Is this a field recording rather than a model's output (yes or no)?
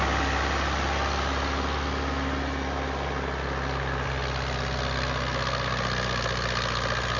yes